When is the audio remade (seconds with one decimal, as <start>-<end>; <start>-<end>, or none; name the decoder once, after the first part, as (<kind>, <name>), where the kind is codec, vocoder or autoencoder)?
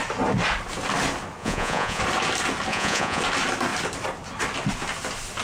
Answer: 1.4-2.0 (vocoder, Vocos); 2.7-3.2